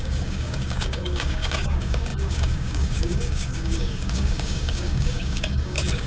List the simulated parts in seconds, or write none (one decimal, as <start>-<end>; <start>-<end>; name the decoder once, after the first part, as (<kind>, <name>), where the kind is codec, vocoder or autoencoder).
0.0-6.1 (codec, DAC)

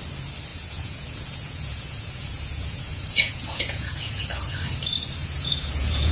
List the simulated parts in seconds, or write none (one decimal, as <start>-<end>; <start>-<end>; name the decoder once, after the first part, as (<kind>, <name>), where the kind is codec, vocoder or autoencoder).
0.5-4.2 (vocoder, Vocos); 5.2-6.1

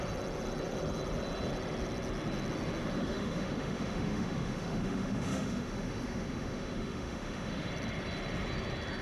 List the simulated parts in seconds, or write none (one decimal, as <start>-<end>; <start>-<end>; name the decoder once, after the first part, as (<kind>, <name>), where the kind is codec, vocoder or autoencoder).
3.0-7.7 (autoencoder, DAC-VAE)

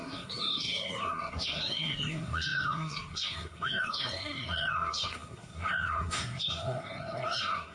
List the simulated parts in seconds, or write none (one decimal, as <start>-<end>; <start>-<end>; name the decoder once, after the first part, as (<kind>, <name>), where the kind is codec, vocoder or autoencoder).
0.0-7.7 (codec, SNAC)

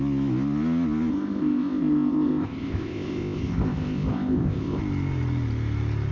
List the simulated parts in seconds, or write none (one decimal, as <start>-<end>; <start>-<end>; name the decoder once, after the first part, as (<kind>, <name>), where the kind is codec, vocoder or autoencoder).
1.1-4.8 (codec, ZipCodec)

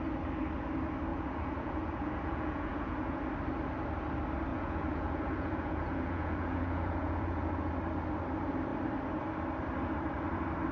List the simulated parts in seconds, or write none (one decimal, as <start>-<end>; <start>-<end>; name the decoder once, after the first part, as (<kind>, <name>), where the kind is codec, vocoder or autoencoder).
1.1-3.2 (vocoder, Vocos); 4.5-7.7

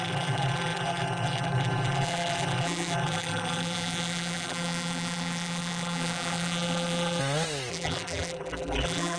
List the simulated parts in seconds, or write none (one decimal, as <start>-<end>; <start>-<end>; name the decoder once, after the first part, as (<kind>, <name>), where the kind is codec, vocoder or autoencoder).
0.0-7.2 (vocoder, BigVGAN v2); 7.7-9.2

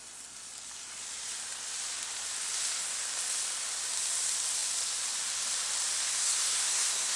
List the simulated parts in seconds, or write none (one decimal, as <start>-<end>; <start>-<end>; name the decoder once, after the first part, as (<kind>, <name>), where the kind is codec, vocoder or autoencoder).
6.1-7.2 (codec, SNAC)